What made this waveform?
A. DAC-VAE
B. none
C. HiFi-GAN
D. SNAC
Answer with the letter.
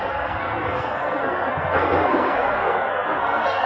D